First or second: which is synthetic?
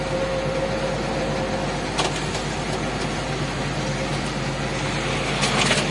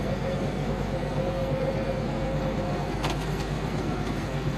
second